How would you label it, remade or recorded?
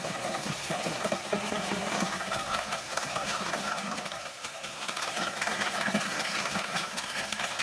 remade